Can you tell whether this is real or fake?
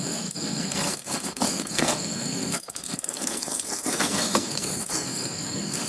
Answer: fake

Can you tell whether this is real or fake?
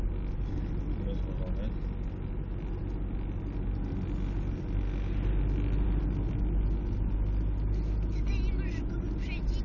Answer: real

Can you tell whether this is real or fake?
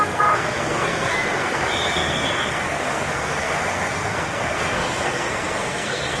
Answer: fake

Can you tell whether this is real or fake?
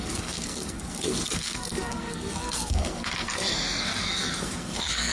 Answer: fake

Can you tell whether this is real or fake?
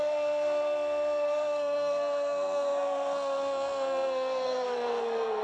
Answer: fake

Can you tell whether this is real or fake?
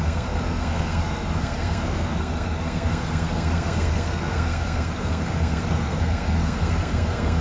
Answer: fake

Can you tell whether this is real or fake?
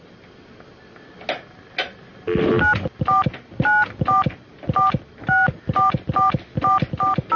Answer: real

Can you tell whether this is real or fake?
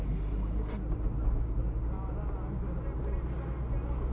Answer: real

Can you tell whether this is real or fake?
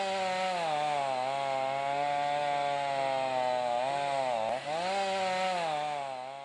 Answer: real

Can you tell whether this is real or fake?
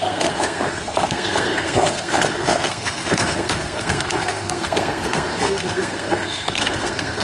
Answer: fake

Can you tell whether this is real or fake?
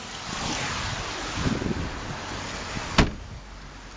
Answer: real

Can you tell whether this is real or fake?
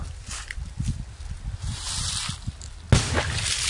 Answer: real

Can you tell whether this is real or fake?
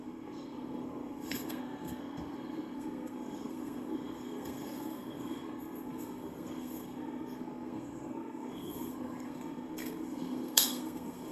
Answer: fake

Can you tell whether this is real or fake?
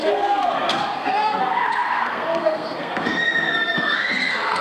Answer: fake